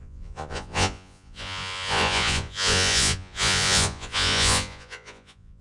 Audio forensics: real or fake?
fake